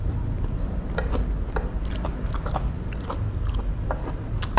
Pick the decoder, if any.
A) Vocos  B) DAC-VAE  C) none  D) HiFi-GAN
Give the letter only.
C